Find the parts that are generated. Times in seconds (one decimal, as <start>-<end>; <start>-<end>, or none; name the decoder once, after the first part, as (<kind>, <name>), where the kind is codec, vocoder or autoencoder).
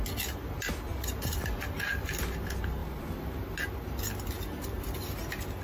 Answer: 0.9-1.5 (vocoder, BigVGAN v2)